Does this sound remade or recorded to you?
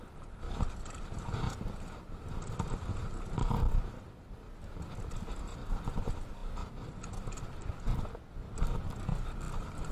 recorded